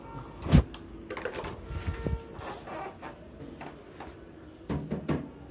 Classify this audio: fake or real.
real